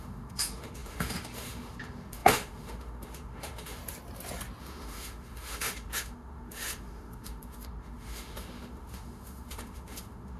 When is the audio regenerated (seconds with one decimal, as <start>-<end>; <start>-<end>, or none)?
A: 0.0-3.8; 4.6-10.4